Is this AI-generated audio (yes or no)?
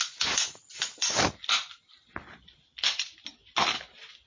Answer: no